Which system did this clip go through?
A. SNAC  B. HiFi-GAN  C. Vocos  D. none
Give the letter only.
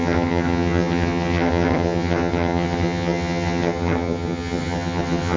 B